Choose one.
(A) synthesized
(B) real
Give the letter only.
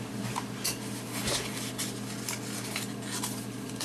B